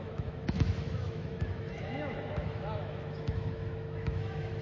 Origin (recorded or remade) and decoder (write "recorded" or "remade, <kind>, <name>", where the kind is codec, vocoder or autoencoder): remade, autoencoder, DAC-VAE